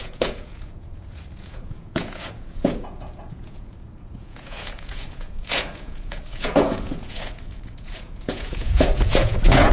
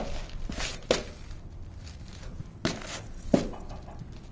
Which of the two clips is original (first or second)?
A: second